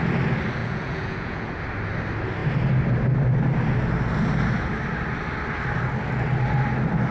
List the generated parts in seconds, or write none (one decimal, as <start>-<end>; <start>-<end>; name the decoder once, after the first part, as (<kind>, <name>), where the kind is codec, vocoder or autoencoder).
0.6-1.6 (vocoder, Vocos)